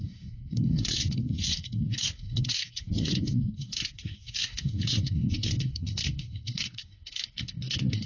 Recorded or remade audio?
remade